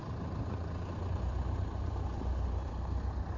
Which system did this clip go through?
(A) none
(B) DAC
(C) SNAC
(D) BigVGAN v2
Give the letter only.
D